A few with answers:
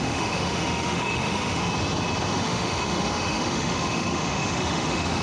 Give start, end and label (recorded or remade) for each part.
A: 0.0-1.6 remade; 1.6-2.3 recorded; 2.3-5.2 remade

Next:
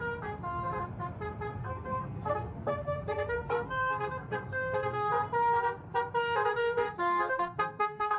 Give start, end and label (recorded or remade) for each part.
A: 0.0-1.6 recorded; 1.6-5.1 remade; 5.1-6.5 recorded; 6.5-8.2 remade